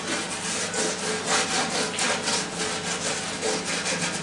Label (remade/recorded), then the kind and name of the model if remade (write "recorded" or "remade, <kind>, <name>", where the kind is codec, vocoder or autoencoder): recorded